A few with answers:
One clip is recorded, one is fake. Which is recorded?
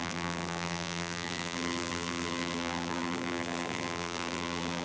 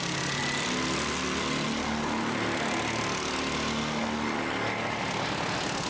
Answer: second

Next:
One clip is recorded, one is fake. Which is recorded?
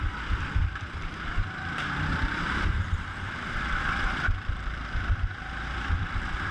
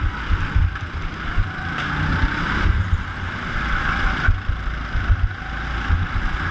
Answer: second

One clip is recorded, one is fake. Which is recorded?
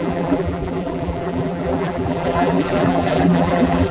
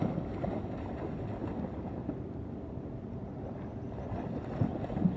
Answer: second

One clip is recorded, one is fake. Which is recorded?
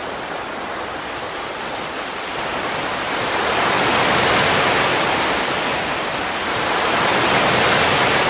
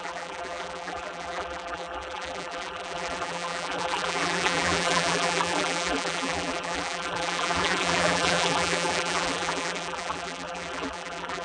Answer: first